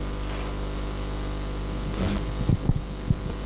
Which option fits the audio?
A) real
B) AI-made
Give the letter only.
A